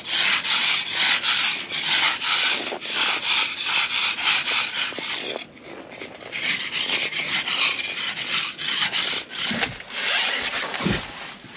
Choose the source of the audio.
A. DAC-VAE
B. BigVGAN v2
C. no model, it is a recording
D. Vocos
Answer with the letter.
C